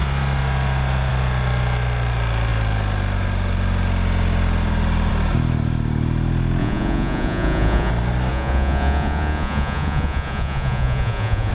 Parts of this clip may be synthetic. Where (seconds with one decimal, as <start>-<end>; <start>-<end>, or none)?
6.6-7.9; 8.3-11.5